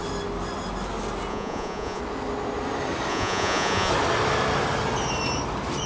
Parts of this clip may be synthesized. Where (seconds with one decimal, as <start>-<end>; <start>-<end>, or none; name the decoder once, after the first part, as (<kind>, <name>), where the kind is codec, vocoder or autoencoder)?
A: 1.3-2.0 (vocoder, Vocos); 3.1-3.9